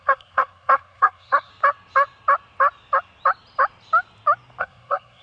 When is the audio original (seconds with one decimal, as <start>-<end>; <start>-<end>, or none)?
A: 1.5-4.6